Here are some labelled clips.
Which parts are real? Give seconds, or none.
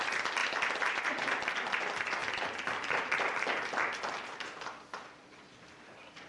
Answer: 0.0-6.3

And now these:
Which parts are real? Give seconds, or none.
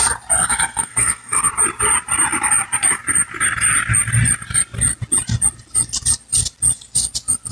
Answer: 0.0-0.4; 1.5-7.5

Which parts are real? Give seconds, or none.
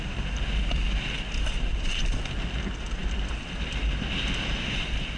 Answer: 0.0-5.2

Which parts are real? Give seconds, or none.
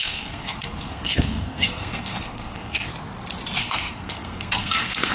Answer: 2.9-3.6